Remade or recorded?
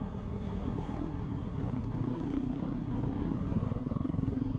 remade